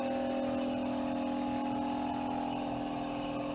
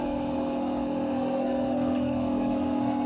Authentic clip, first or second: first